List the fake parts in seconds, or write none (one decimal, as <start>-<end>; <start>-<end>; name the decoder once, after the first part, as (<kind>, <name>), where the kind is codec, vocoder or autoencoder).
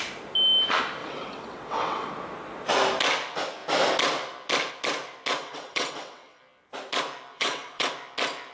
1.0-2.1 (vocoder, WaveNeXt); 5.4-6.4; 7.3-7.9